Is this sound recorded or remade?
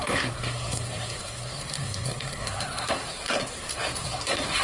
remade